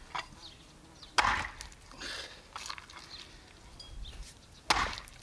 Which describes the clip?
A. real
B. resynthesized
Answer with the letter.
A